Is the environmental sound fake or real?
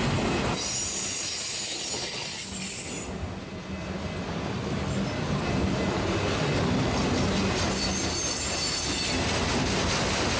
real